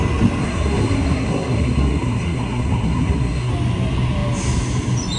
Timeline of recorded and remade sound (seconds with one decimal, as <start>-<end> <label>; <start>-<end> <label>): 0.0-0.4 recorded; 0.4-3.5 remade; 3.5-5.2 recorded